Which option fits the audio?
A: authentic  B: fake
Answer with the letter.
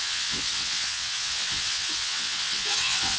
B